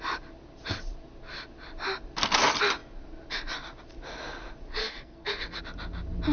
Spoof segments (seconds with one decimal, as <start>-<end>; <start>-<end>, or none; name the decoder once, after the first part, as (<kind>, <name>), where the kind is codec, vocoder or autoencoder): 4.8-5.6 (codec, SNAC)